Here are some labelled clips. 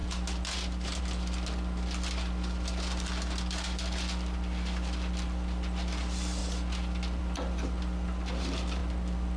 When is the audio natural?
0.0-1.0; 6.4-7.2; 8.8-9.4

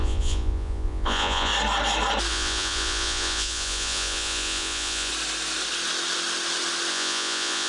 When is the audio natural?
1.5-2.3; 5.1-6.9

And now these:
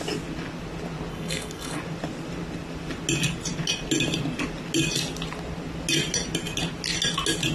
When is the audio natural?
0.0-1.1; 1.8-7.5

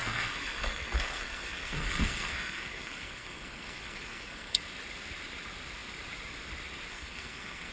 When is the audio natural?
4.6-6.9